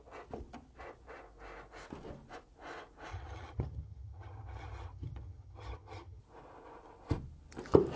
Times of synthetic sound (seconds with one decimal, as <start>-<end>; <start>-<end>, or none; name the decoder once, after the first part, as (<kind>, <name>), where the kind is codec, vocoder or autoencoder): 3.1-6.2 (vocoder, HiFi-GAN)